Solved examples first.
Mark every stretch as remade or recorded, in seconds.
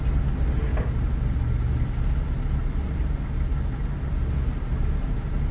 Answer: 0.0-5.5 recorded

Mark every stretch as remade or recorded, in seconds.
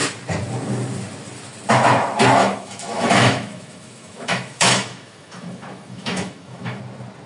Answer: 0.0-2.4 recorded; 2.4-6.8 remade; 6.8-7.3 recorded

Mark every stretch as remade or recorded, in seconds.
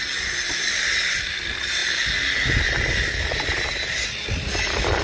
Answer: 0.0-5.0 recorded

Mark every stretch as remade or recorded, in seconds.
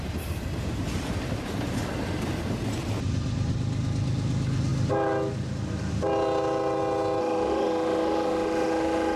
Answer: 0.0-7.2 recorded; 7.2-9.2 remade